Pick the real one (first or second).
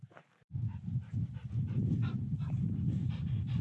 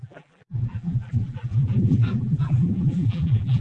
first